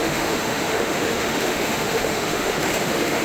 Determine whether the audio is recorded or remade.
remade